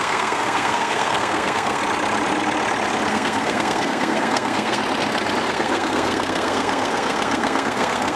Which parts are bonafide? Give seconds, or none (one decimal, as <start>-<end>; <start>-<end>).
1.8-3.1; 4.8-5.5